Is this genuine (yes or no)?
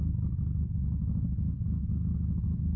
yes